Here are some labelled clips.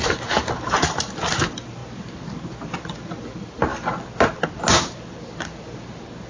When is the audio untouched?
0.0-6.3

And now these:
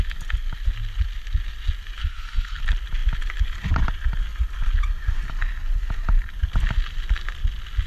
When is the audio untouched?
0.0-2.0; 2.6-7.9